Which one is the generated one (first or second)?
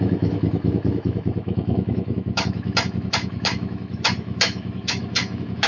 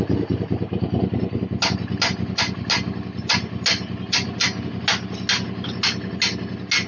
first